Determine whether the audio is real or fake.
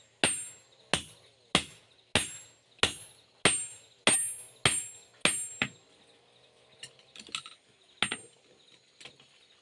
real